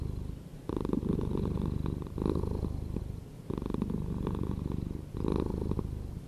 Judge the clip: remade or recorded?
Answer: recorded